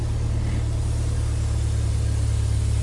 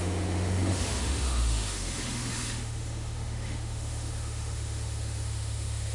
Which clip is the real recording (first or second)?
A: first